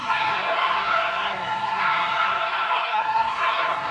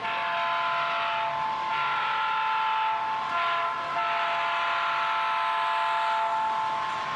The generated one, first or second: first